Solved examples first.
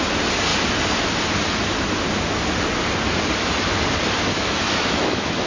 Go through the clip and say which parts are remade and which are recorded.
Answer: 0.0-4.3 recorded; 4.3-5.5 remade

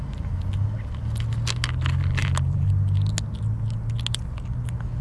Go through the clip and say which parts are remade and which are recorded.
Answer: 0.0-2.1 recorded; 2.1-2.7 remade; 2.7-5.0 recorded

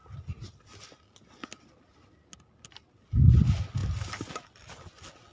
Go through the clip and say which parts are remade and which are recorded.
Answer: 0.0-5.3 recorded

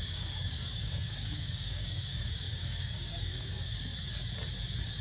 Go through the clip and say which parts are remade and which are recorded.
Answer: 0.0-3.9 remade; 3.9-5.0 recorded

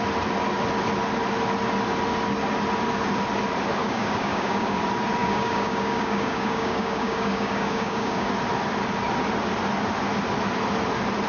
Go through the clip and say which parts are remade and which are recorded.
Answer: 0.0-3.8 recorded; 3.8-4.8 remade; 4.8-5.2 recorded; 5.2-8.3 remade; 8.3-11.3 recorded

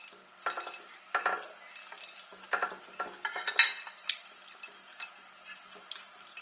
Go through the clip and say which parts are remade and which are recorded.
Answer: 0.0-6.4 recorded

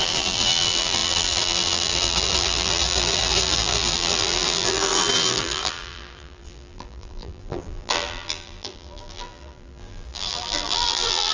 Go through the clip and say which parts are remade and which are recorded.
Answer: 0.0-11.3 remade

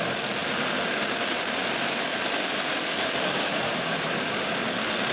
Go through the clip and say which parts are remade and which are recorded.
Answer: 0.0-5.1 recorded